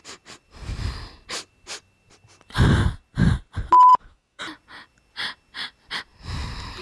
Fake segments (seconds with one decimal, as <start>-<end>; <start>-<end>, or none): 3.9-4.4